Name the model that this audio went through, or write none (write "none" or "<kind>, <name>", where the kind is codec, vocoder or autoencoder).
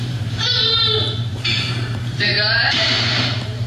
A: vocoder, BigVGAN v2